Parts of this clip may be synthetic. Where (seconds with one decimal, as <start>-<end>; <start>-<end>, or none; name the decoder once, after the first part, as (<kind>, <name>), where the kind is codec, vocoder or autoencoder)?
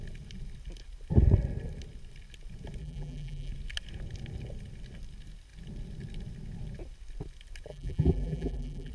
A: 2.8-3.5 (vocoder, BigVGAN v2); 7.7-8.9